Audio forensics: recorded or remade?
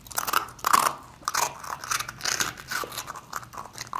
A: recorded